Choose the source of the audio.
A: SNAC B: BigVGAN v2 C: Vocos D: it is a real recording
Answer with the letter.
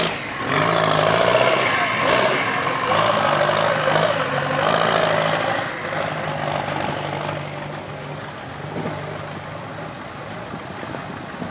D